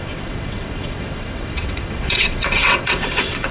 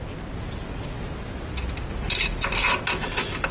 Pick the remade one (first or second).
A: first